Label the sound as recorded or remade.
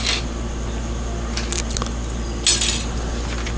recorded